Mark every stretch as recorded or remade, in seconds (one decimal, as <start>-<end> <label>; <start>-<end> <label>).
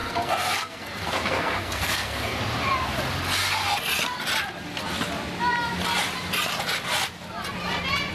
0.0-2.4 remade; 2.4-8.1 recorded